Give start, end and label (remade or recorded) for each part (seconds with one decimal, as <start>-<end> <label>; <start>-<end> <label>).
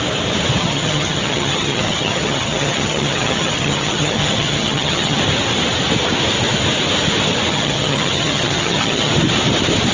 0.0-0.6 recorded; 0.6-5.2 remade; 5.2-7.5 recorded; 7.5-9.1 remade; 9.1-9.9 recorded